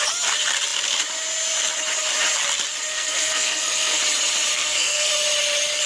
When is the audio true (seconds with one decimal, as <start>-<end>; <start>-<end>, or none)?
0.0-2.9; 4.0-4.5; 5.1-5.9